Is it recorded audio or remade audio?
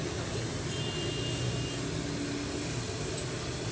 recorded